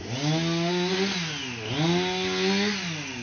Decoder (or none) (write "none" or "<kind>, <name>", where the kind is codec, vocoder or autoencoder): none